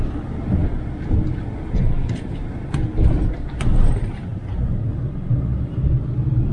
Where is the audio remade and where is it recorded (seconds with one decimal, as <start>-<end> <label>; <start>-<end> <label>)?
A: 0.0-4.3 remade; 4.3-5.6 recorded; 5.6-6.5 remade